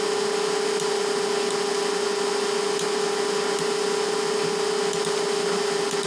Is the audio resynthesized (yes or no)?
no